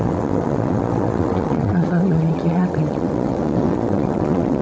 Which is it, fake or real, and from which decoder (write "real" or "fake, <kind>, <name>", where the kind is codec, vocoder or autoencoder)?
fake, vocoder, WaveNeXt